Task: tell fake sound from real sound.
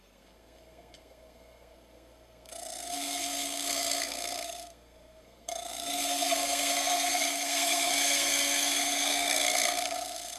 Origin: fake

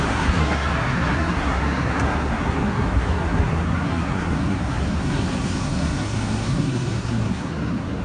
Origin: fake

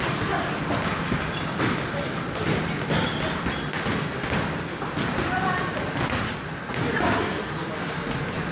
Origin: real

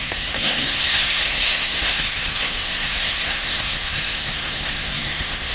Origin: fake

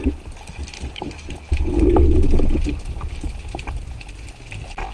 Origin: real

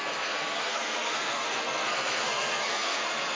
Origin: fake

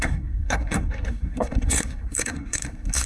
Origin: fake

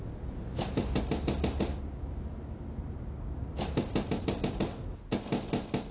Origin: real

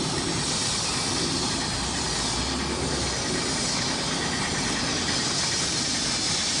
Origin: real